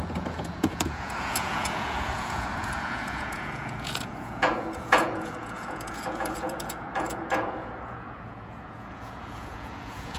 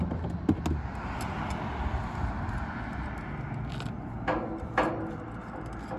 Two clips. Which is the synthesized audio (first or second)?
first